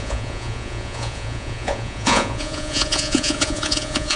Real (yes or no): no